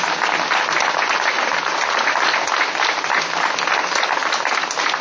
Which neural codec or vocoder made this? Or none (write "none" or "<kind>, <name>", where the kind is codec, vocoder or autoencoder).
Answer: none